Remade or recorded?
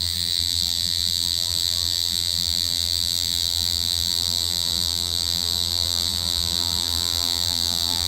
remade